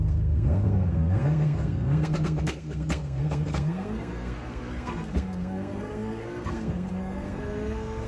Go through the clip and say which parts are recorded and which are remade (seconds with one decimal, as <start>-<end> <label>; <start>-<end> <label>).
0.0-8.1 remade